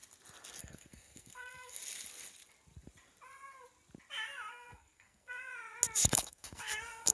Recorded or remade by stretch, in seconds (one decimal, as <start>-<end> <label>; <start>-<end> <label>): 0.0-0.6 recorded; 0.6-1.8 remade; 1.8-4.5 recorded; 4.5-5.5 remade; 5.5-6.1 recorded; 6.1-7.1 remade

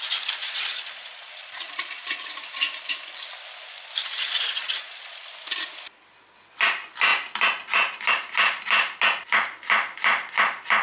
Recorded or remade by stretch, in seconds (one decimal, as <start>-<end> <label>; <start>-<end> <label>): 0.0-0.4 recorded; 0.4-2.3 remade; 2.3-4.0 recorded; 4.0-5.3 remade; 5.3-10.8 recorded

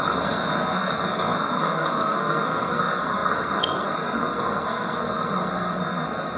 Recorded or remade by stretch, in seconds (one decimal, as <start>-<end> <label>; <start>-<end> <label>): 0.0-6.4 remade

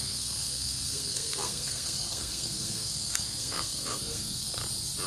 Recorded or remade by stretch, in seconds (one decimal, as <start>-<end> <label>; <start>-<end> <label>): 0.0-4.6 remade; 4.6-5.1 recorded

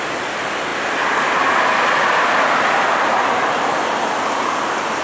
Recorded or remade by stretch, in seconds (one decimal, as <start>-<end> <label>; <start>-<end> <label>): 0.0-5.0 recorded

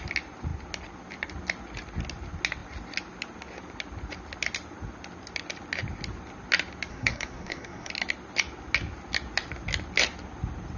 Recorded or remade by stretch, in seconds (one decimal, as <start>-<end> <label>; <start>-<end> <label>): 0.0-6.9 recorded; 6.9-7.9 remade; 7.9-10.8 recorded

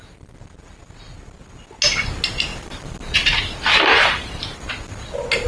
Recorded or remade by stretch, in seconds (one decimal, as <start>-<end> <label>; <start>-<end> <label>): 0.0-2.5 recorded; 2.5-4.7 remade; 4.7-5.5 recorded

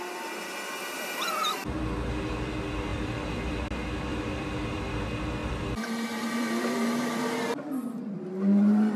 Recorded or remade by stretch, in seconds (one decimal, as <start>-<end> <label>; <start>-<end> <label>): 0.0-2.9 recorded; 2.9-3.6 remade; 3.6-4.1 recorded; 4.1-4.8 remade; 4.8-5.4 recorded; 5.4-7.2 remade; 7.2-9.0 recorded